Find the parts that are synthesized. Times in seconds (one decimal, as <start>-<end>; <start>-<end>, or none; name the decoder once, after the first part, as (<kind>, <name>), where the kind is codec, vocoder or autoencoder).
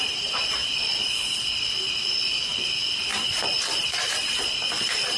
none